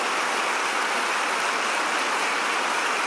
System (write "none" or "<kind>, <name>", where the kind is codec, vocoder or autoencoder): none